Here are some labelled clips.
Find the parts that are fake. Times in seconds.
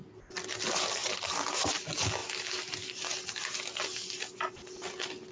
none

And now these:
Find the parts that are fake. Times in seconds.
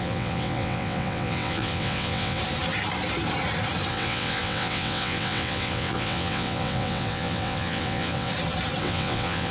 0.0-2.4 (vocoder, WaveNeXt); 3.9-8.3; 8.8-9.5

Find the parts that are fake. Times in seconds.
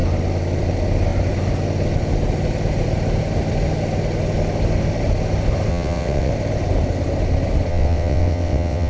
5.7-6.3 (vocoder, WaveNeXt); 7.7-8.9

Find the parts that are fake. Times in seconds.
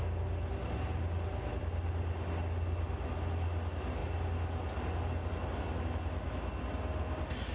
none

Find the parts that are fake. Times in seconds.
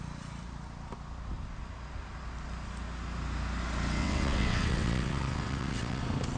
4.0-6.0 (vocoder, WaveNeXt)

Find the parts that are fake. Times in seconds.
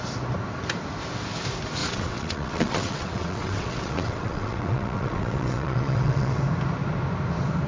1.8-6.4 (vocoder, WaveNeXt)